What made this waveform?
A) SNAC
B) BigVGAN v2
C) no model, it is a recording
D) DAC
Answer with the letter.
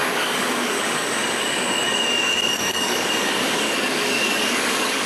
D